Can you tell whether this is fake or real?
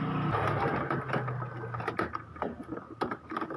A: real